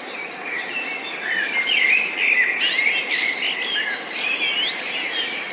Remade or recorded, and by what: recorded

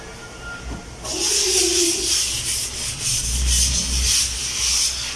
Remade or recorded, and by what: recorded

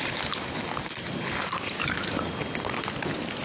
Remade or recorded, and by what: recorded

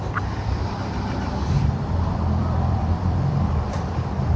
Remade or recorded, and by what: remade, vocoder, BigVGAN v2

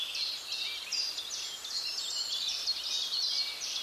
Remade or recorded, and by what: recorded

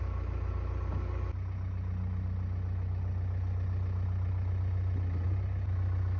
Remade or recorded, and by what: recorded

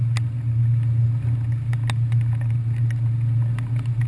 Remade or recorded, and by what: recorded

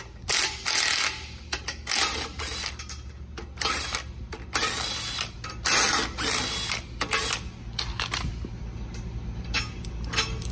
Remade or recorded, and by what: recorded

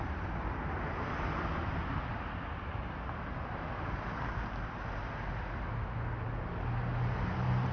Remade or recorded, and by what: recorded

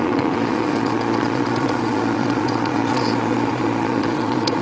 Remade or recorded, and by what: remade, vocoder, Vocos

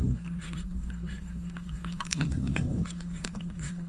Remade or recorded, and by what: remade, codec, SNAC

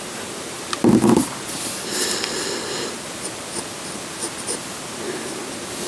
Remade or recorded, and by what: recorded